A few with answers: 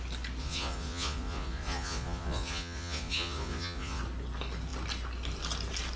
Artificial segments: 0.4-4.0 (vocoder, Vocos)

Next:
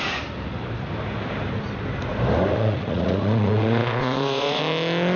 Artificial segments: 2.5-4.6 (vocoder, Vocos)

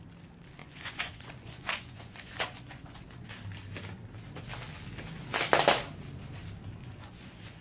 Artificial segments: 0.6-3.3 (vocoder, Vocos); 6.8-7.6

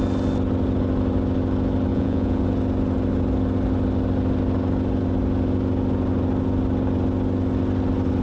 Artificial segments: 1.9-2.4 (vocoder, Vocos)

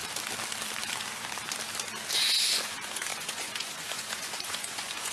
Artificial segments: 2.5-5.1 (vocoder, Vocos)

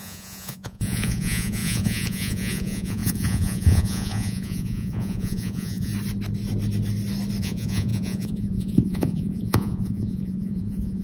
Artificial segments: 0.0-5.9 (vocoder, Vocos); 7.4-11.0